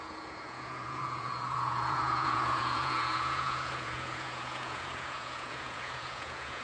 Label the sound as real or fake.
fake